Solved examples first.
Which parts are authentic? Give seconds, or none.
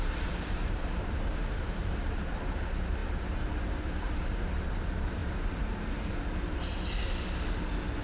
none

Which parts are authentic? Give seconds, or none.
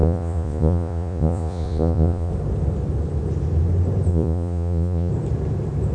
2.3-4.1; 5.1-5.9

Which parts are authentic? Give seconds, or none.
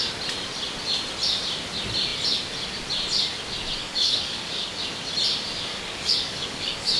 0.0-3.8; 4.8-5.7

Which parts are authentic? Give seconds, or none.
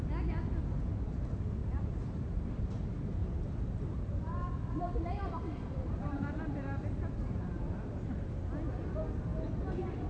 0.0-1.6; 2.6-3.2; 8.4-10.1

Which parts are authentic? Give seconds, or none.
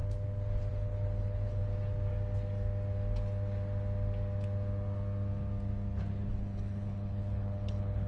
0.0-0.7; 1.6-6.3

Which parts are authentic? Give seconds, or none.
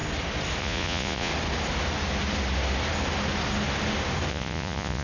0.0-0.6; 1.3-4.3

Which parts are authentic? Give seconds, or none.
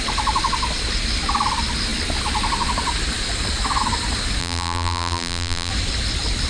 0.0-4.4; 5.7-6.5